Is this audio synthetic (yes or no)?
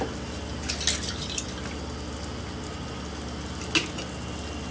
no